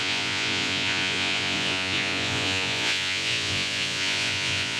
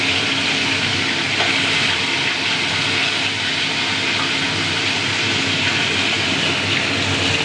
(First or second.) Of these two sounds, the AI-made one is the first